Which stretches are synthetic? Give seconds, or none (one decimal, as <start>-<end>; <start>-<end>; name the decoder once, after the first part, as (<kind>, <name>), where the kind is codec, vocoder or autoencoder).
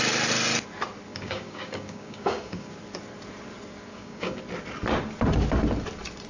1.1-2.7 (codec, DAC); 3.9-4.4